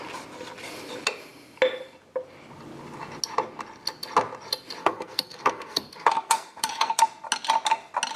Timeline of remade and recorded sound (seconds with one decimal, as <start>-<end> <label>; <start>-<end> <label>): 0.0-4.8 recorded; 4.8-7.0 remade; 7.0-8.2 recorded